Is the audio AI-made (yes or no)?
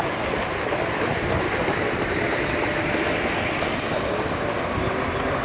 no